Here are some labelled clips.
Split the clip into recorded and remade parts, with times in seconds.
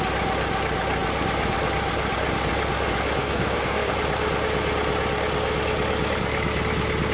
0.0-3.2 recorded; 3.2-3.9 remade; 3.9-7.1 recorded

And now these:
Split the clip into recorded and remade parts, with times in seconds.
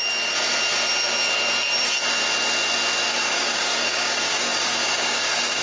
0.0-3.1 recorded; 3.1-5.6 remade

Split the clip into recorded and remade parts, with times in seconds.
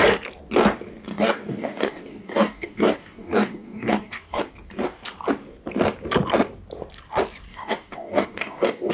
0.0-1.1 recorded; 1.1-4.4 remade; 4.4-7.5 recorded; 7.5-8.9 remade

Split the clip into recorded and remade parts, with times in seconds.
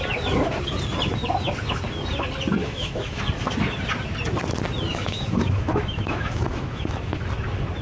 0.0-2.6 recorded; 2.6-3.2 remade; 3.2-4.9 recorded; 4.9-7.2 remade; 7.2-7.8 recorded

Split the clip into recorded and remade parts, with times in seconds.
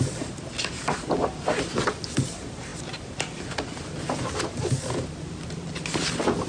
0.0-6.5 recorded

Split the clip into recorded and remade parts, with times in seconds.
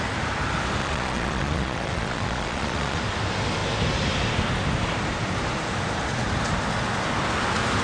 0.0-0.8 recorded; 0.8-3.0 remade; 3.0-7.8 recorded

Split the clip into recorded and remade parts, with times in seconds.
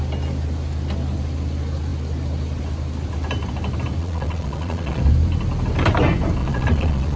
0.0-4.0 recorded; 4.0-5.0 remade; 5.0-6.4 recorded; 6.4-7.2 remade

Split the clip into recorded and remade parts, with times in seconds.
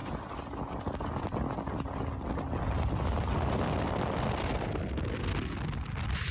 0.0-6.3 recorded